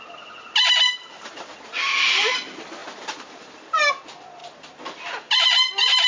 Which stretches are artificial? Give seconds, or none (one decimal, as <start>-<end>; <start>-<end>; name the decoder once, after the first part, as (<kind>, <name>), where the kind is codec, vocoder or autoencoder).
none